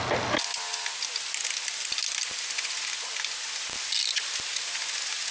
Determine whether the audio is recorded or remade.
recorded